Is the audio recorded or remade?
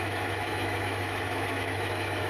remade